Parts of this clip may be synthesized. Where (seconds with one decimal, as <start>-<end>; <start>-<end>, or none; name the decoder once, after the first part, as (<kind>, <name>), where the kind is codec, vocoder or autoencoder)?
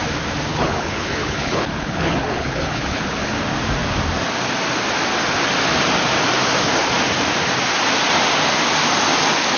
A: 0.5-3.3 (codec, HILCodec)